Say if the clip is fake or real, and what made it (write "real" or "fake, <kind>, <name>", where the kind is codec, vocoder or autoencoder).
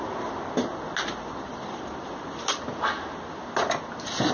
real